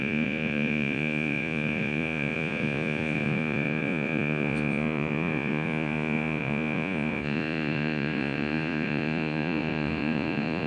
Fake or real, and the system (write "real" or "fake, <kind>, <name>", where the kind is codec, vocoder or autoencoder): fake, vocoder, Vocos